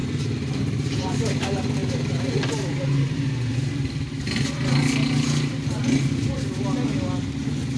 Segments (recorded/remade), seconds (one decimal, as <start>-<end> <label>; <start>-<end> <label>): 0.0-1.1 remade; 1.1-1.8 recorded; 1.8-4.3 remade; 4.3-7.8 recorded